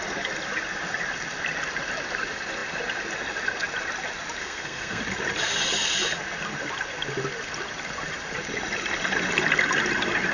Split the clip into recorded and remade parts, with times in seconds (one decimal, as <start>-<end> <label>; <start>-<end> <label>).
0.0-4.4 recorded; 4.4-5.0 remade; 5.0-10.3 recorded